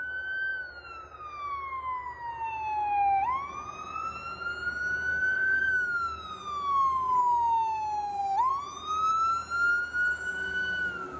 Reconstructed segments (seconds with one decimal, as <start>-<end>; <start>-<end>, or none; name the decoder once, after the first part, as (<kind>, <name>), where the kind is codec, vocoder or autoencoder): 5.1-5.6 (codec, DAC)